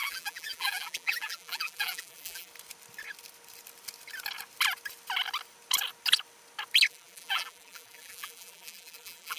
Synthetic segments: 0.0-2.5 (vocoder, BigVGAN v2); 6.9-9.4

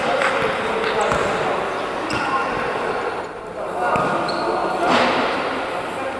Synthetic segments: 2.4-3.1 (vocoder, BigVGAN v2)

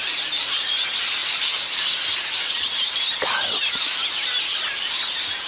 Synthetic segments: none